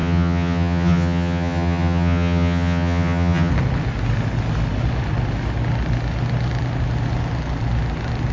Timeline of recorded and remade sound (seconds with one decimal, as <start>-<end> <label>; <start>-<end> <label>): 0.0-3.5 remade; 3.5-8.3 recorded